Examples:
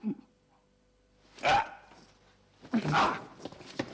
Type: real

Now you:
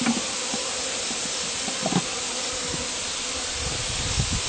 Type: real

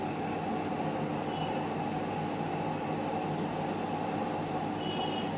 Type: real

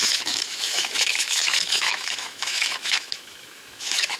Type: fake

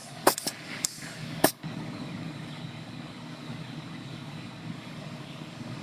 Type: fake